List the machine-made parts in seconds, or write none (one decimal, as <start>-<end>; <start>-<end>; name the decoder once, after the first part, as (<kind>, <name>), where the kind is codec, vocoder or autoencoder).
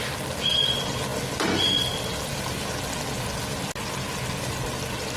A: none